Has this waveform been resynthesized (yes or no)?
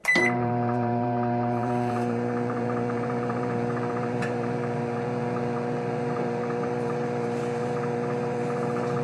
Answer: yes